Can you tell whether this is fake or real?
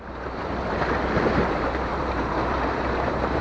fake